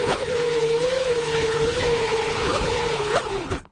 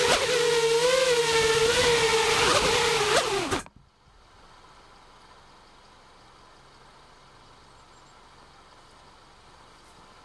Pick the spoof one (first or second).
first